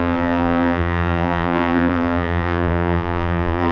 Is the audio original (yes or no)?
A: no